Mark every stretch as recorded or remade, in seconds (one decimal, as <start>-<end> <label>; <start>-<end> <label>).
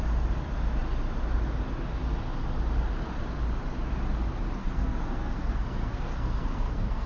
0.0-4.6 recorded; 4.6-7.1 remade